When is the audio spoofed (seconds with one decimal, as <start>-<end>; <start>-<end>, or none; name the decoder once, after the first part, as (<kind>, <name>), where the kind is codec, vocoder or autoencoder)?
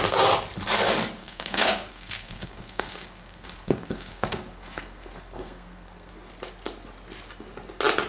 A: 1.2-6.1 (codec, SNAC)